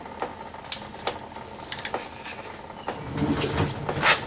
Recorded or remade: recorded